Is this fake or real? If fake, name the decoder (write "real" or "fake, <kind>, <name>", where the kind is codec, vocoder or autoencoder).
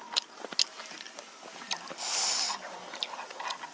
real